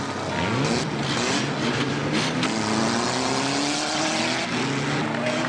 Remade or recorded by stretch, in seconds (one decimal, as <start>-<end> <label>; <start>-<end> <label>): 0.0-5.5 recorded